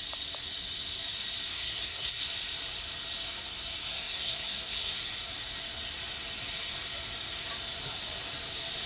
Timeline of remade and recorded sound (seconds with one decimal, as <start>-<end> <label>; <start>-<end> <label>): 0.0-1.5 recorded; 1.5-2.2 remade; 2.2-3.9 recorded; 3.9-5.1 remade; 5.1-8.9 recorded